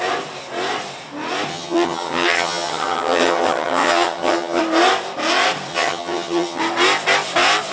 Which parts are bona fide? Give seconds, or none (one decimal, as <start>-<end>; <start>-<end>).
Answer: 0.0-1.5; 4.6-5.7; 6.6-7.7

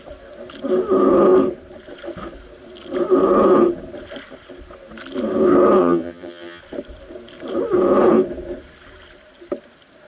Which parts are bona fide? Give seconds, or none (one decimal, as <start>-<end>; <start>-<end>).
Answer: 0.0-5.8; 6.6-10.1

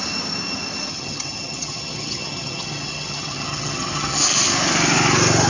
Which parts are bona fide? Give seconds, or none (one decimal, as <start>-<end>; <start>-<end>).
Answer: 0.0-0.9; 4.2-5.5

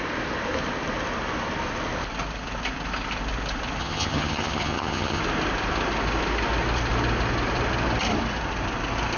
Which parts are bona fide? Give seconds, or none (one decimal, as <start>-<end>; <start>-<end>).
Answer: 0.0-3.8; 5.2-9.2

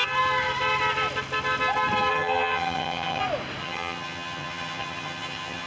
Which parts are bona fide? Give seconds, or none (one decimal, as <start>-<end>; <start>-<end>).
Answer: 0.0-2.1; 3.2-3.6

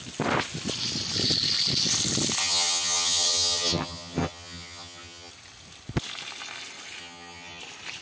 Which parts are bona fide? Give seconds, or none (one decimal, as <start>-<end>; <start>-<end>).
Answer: 0.0-2.4; 5.3-7.0; 7.6-8.0